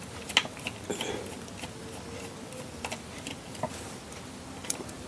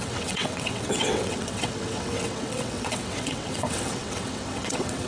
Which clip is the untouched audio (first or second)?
first